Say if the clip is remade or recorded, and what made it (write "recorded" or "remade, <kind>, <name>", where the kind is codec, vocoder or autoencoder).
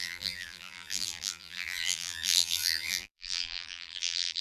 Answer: remade, vocoder, BigVGAN v2